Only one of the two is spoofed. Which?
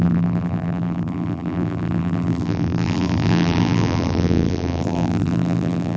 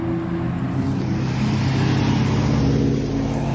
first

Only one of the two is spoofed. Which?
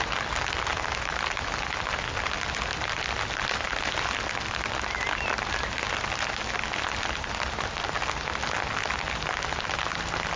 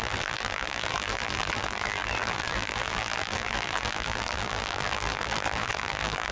second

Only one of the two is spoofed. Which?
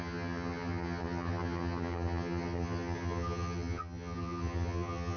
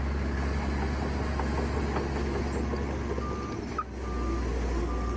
first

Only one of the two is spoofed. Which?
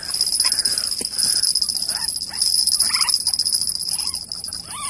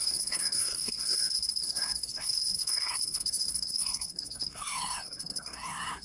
second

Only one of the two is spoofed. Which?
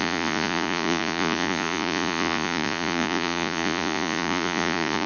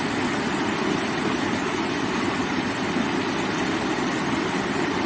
first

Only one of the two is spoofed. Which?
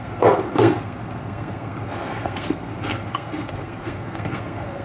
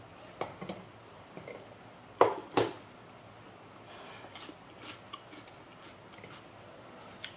first